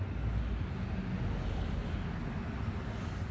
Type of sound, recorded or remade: recorded